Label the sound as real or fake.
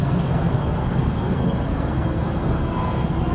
fake